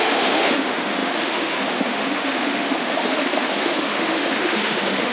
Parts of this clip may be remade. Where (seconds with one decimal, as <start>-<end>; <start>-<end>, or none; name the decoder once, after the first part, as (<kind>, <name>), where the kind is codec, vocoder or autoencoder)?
0.0-5.1 (autoencoder, DAC-VAE)